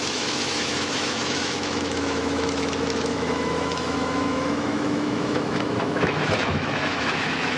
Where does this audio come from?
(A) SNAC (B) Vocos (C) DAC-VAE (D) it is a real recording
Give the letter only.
C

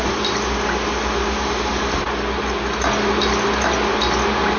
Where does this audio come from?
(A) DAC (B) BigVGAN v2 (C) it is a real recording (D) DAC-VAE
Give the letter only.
C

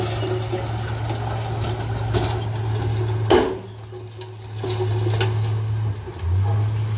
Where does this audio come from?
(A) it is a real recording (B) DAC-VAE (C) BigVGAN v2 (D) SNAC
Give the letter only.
A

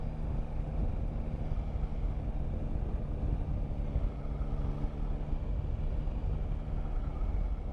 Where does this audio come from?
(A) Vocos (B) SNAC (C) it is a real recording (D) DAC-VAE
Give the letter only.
C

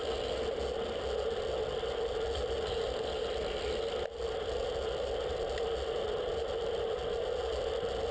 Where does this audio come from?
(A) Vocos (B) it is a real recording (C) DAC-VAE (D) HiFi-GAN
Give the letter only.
B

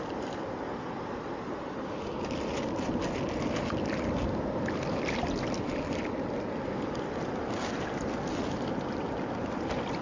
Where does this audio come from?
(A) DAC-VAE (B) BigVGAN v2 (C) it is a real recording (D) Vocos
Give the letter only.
C